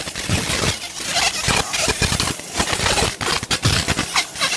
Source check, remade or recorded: recorded